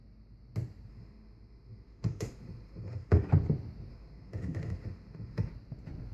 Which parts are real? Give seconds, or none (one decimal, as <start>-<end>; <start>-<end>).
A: 0.0-0.9; 3.3-3.9; 5.5-6.1